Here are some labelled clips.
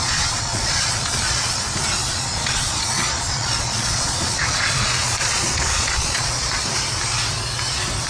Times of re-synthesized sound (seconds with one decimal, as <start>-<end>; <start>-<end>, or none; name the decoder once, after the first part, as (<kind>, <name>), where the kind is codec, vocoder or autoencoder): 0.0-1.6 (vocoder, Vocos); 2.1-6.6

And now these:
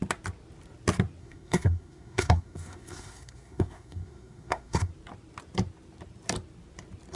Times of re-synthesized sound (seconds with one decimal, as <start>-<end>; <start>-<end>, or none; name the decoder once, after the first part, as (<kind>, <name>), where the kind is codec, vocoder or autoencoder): 1.2-4.9 (codec, SNAC)

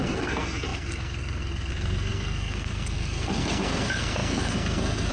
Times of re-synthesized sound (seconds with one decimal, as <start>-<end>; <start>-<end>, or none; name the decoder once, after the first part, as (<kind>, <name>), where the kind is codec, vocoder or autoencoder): 0.0-5.1 (codec, SNAC)

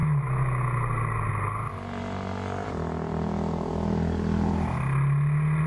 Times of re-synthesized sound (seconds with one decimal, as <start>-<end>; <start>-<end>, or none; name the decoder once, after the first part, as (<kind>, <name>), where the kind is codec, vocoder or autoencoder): none